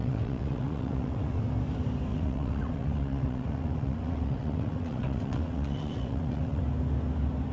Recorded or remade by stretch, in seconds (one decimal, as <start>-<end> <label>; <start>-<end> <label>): 0.0-1.4 remade; 1.4-2.1 recorded; 2.1-6.6 remade; 6.6-7.5 recorded